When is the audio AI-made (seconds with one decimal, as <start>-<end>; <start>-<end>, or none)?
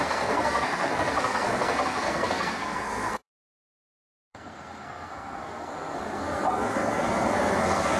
0.0-8.0